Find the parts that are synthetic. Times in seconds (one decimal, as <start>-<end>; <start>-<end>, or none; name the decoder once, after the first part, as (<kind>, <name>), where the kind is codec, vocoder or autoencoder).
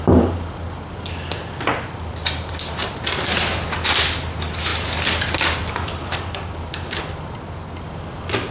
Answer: none